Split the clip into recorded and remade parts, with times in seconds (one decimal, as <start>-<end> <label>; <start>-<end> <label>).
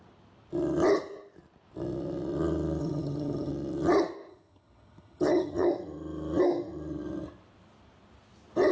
0.0-2.8 recorded; 2.8-3.5 remade; 3.5-4.3 recorded; 4.3-5.7 remade; 5.7-8.7 recorded